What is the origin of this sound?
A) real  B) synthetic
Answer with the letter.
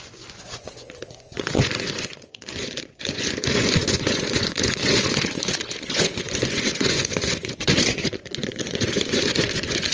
B